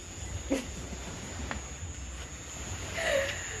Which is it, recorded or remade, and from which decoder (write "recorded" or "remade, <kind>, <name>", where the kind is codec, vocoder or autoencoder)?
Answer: recorded